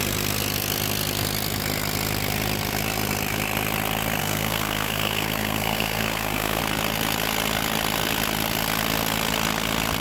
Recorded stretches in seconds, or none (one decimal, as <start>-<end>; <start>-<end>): 0.0-4.2; 6.6-10.0